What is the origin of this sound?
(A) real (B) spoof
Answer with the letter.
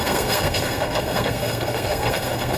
B